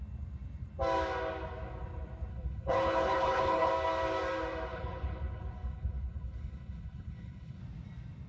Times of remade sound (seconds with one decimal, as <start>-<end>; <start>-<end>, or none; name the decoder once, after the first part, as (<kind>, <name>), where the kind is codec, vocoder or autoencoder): 2.3-3.7 (codec, HILCodec); 4.7-7.6